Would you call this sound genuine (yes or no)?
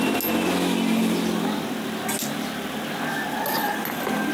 yes